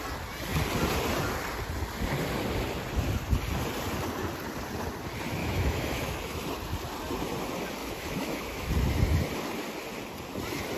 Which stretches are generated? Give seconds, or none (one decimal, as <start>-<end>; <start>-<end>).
5.4-6.5; 7.8-8.7